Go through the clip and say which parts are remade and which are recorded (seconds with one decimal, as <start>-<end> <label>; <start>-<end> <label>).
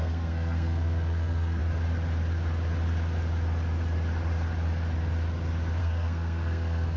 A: 0.0-1.6 remade; 1.6-5.8 recorded; 5.8-7.0 remade